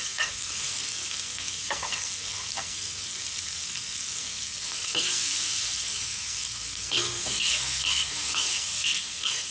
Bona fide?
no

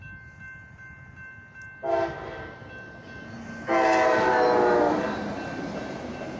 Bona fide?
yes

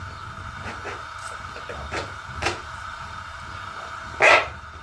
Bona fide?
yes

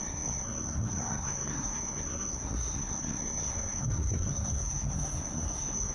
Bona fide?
no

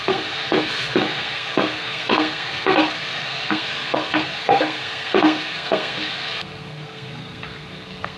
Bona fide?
no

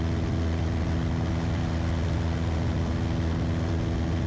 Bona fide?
yes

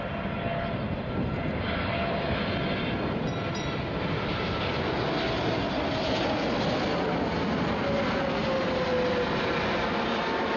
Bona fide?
yes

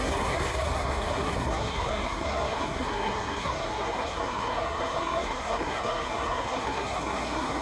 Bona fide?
no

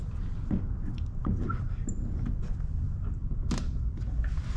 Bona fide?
yes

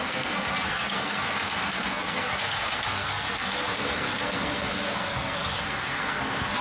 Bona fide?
no